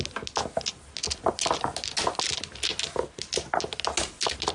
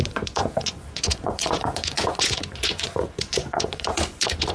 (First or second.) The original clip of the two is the first